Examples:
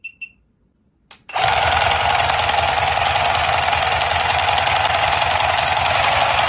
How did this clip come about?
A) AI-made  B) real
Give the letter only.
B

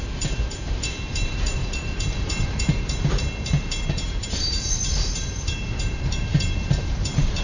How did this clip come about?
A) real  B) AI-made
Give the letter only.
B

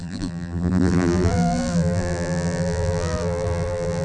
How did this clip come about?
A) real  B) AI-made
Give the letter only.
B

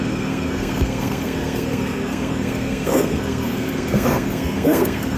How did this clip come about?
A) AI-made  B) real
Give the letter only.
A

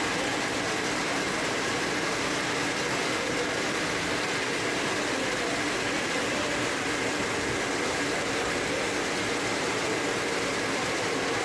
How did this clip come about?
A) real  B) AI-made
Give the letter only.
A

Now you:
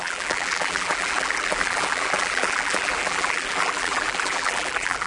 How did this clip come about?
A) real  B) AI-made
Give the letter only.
B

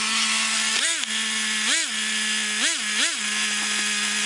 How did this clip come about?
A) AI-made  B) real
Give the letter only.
B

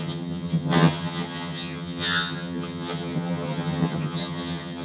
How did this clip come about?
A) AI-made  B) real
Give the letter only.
A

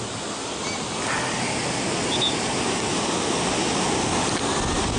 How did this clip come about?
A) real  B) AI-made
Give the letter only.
A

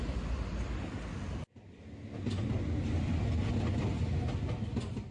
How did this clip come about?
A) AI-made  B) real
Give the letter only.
B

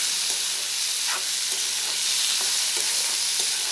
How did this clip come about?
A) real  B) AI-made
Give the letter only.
A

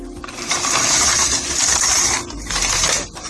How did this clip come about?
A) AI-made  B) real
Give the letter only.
B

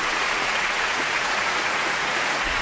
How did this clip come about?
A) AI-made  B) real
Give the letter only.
A